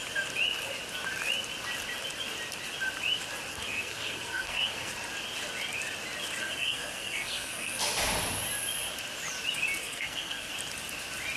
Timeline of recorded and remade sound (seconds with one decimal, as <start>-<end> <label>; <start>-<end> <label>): 0.0-3.5 recorded; 3.5-4.9 remade; 4.9-6.4 recorded; 6.4-7.9 remade; 7.9-9.8 recorded; 9.8-10.5 remade; 10.5-11.4 recorded